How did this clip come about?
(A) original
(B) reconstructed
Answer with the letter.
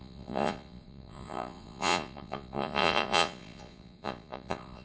B